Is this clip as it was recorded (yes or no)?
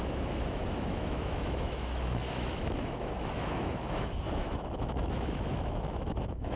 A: no